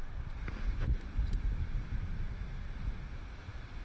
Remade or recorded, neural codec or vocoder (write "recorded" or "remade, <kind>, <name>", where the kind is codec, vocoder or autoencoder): recorded